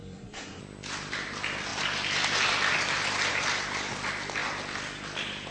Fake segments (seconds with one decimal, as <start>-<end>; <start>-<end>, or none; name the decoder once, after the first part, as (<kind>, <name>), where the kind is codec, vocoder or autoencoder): 0.0-0.6 (codec, SNAC)